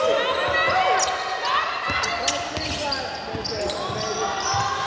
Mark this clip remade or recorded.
recorded